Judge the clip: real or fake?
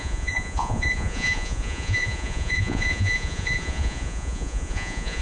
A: fake